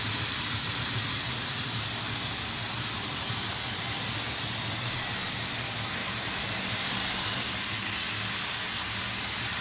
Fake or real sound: real